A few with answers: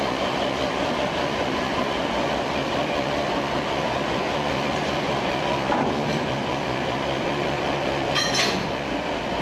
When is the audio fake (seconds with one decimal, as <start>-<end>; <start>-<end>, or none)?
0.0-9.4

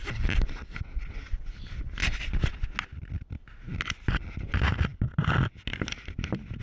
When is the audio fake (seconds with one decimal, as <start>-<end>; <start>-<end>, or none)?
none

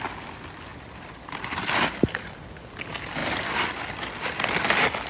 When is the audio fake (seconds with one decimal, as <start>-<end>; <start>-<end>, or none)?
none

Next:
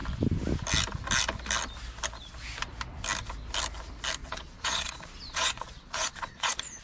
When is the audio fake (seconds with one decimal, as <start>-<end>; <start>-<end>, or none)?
4.2-6.8

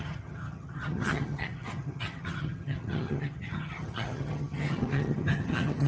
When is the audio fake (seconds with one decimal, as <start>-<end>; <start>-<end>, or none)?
0.0-5.9